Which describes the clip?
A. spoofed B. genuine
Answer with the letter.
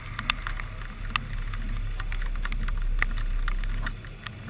B